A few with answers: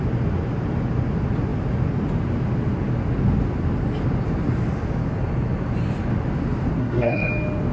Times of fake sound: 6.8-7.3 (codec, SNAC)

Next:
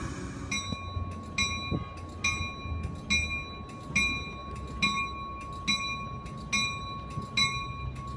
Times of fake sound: none

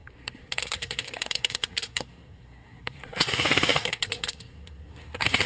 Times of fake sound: 0.0-5.5 (codec, SNAC)